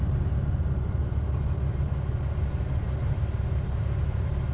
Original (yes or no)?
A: yes